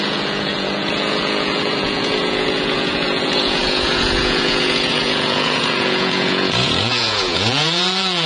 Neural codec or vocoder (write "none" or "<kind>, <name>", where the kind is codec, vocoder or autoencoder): vocoder, Vocos